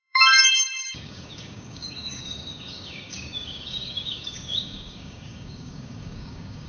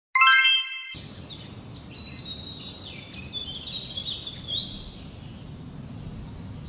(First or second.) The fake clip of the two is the first